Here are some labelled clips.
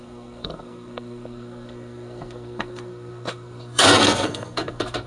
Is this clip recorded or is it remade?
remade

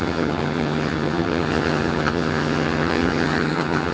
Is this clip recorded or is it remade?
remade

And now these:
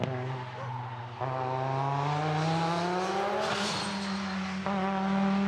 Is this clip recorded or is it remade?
recorded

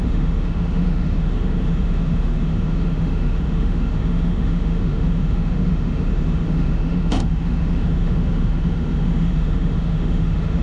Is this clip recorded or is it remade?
remade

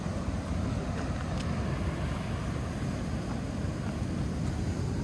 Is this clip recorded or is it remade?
recorded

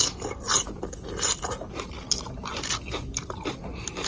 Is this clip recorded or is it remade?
recorded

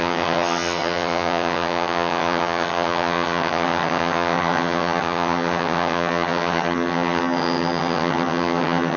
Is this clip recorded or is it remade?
remade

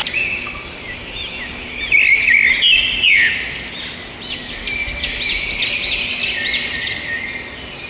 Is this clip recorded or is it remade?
recorded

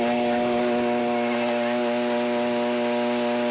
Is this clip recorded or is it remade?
recorded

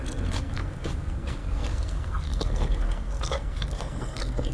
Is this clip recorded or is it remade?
remade